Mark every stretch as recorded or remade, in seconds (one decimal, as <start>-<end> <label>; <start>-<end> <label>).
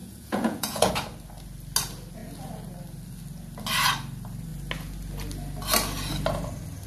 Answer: 0.0-0.9 remade; 0.9-6.9 recorded